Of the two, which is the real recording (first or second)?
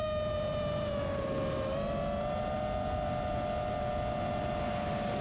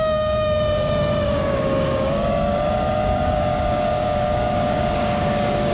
first